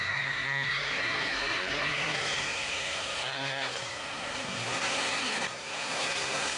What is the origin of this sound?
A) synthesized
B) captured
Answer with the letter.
A